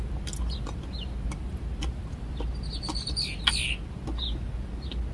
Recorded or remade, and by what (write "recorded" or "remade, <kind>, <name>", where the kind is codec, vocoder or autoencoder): recorded